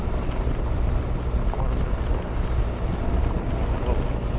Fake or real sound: real